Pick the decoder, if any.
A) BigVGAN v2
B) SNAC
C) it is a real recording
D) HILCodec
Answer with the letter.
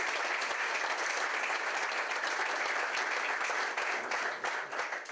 C